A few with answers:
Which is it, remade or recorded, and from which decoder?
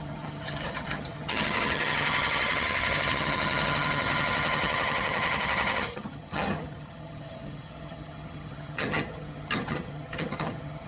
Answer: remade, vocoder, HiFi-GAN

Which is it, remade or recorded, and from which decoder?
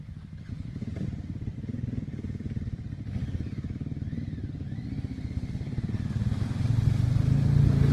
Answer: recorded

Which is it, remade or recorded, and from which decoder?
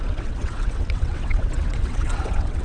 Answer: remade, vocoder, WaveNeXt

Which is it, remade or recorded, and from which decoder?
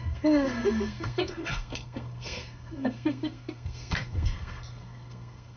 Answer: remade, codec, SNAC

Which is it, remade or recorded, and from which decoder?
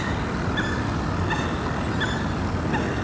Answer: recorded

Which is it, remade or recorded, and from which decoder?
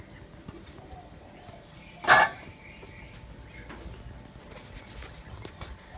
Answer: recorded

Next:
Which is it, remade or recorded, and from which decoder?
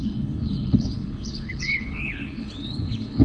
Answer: remade, codec, HILCodec